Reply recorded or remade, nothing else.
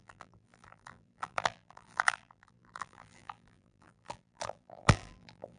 remade